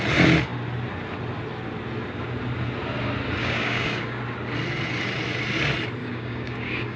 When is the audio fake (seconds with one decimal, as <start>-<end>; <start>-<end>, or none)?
3.4-4.2; 6.0-7.0